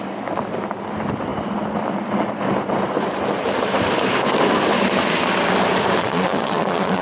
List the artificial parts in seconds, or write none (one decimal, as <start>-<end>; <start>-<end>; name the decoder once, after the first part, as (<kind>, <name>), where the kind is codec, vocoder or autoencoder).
6.0-7.0 (vocoder, Vocos)